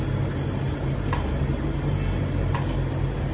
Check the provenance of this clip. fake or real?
real